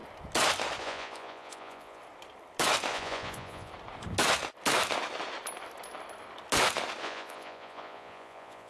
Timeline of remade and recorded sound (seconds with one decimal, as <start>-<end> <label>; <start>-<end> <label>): 0.0-0.8 recorded; 0.8-2.0 remade; 2.0-2.9 recorded; 2.9-3.7 remade; 3.7-7.0 recorded; 7.0-8.7 remade